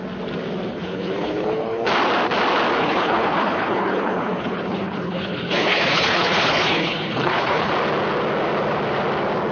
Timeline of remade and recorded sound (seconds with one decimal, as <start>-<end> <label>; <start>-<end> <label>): 0.0-0.7 recorded; 0.7-1.9 remade; 1.9-2.8 recorded; 2.8-7.7 remade; 7.7-9.5 recorded